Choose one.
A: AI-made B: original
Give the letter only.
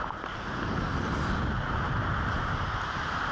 B